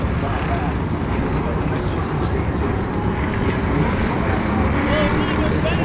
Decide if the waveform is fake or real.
real